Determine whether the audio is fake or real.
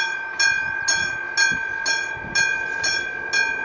real